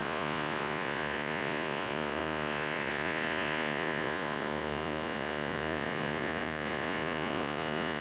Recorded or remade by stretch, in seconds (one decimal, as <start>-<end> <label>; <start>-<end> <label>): 0.0-8.0 remade